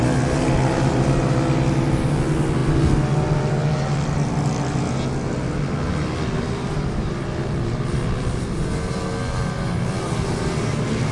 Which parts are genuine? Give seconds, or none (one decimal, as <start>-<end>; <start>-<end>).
0.0-11.1